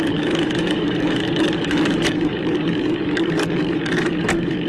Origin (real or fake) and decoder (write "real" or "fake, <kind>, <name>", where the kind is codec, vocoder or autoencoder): fake, codec, DAC